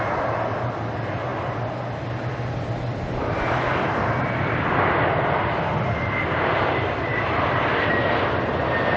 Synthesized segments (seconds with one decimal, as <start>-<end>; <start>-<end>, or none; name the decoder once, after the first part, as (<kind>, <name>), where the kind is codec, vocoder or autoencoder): none